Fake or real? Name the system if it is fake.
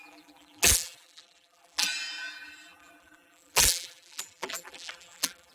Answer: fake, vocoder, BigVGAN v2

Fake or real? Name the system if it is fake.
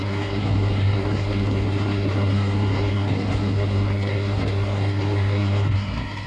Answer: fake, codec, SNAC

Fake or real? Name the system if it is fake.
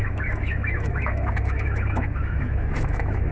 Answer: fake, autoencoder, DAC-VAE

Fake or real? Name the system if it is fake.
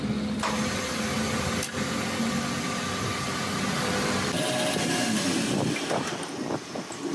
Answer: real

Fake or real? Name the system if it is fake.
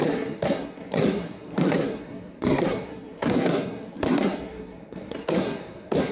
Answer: fake, codec, SNAC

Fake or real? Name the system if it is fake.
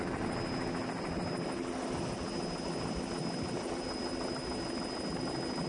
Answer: real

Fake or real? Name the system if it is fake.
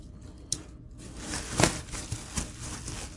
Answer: real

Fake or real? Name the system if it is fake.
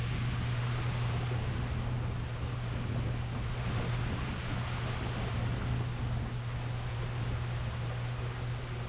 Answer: real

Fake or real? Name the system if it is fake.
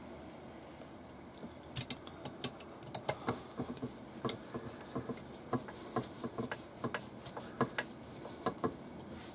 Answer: real